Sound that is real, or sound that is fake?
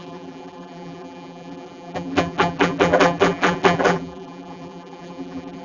fake